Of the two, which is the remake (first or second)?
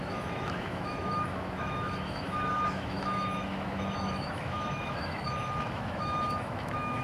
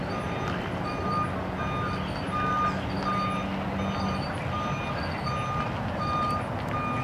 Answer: first